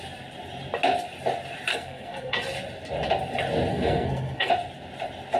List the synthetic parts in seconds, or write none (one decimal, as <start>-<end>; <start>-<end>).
1.7-2.4; 3.7-4.5